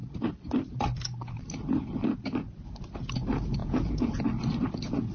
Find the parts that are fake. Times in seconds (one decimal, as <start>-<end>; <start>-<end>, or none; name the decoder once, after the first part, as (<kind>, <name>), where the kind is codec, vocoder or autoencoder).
3.6-4.2 (vocoder, Vocos)